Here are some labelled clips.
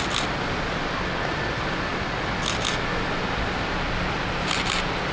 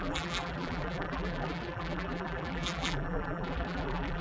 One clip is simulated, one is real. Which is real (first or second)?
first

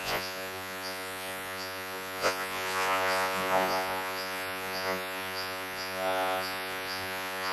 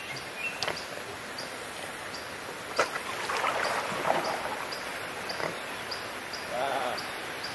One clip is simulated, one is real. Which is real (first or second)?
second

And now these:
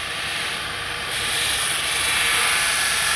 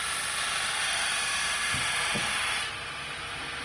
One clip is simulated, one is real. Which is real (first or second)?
second